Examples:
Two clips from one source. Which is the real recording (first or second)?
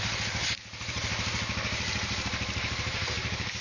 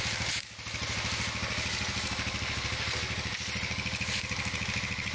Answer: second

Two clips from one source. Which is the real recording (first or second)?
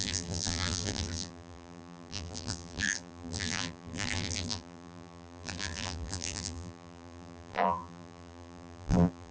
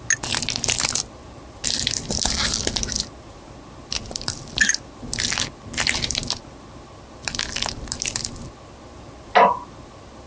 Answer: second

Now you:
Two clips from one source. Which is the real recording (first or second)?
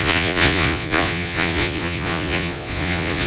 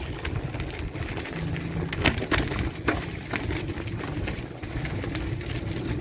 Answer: second